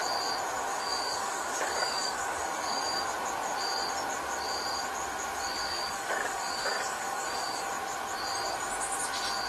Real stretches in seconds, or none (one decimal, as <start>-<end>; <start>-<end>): 0.0-0.7; 3.1-5.6; 7.7-9.5